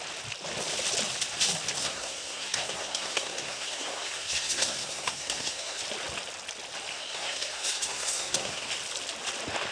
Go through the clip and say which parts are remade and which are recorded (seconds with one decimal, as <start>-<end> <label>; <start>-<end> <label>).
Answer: 0.0-1.8 recorded; 1.8-5.8 remade; 5.8-6.9 recorded; 6.9-8.7 remade; 8.7-9.7 recorded